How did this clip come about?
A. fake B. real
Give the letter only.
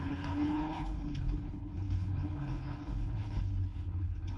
A